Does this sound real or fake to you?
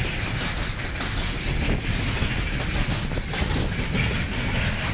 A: real